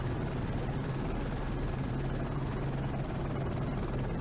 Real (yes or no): yes